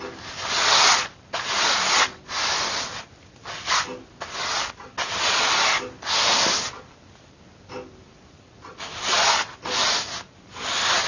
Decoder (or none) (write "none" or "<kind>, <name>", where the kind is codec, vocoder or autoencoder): none